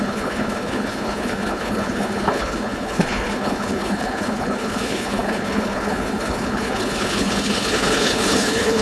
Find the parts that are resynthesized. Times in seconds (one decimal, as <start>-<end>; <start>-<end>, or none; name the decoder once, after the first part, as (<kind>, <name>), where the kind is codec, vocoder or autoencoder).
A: 0.0-8.8 (codec, HILCodec)